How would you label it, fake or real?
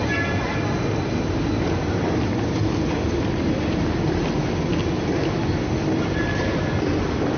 real